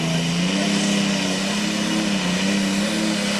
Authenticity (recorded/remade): recorded